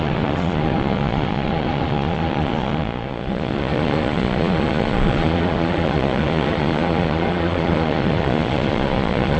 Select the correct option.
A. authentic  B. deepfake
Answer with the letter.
B